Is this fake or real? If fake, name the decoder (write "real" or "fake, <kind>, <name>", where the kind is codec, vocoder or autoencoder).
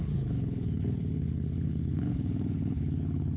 fake, codec, HILCodec